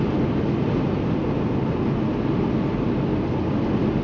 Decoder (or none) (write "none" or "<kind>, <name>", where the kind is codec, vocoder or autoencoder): none